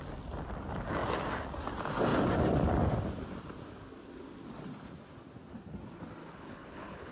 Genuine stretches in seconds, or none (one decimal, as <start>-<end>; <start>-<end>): 0.0-6.2